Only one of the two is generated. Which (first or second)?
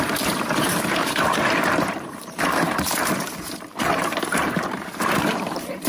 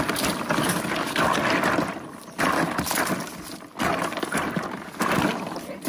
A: first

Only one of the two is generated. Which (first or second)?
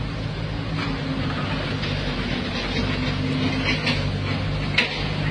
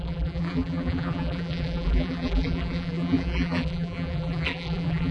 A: second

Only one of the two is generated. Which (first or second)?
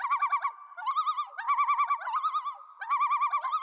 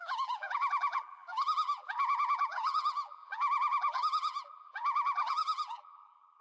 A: second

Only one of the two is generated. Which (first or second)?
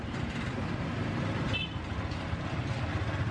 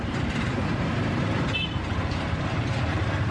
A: second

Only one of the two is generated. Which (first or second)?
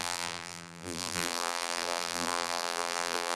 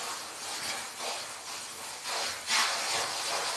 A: first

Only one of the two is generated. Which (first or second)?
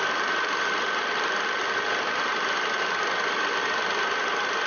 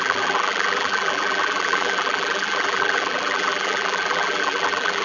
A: second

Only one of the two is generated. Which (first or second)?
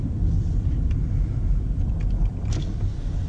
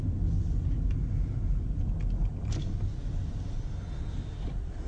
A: first